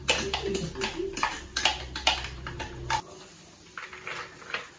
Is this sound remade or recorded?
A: recorded